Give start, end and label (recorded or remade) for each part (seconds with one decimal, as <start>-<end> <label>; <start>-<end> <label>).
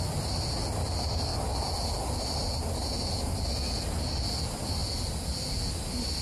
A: 0.0-1.3 remade; 1.3-2.0 recorded; 2.0-4.8 remade; 4.8-5.7 recorded; 5.7-6.2 remade